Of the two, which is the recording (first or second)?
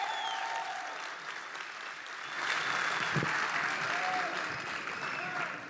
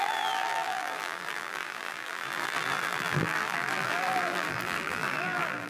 first